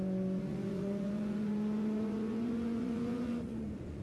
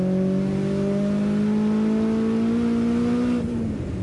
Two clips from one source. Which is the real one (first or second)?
second